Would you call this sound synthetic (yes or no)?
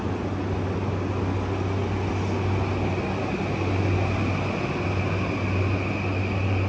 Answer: no